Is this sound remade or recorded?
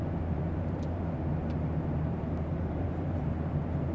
remade